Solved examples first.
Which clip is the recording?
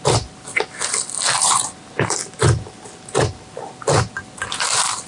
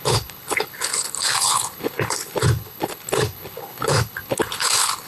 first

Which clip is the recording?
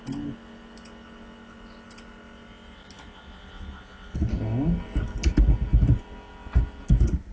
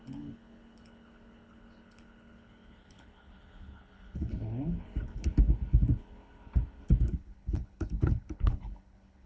first